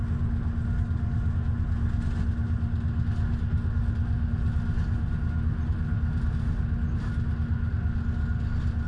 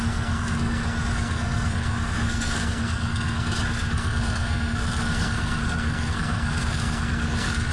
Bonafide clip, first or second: first